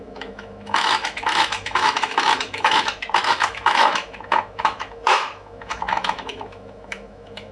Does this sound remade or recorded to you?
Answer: remade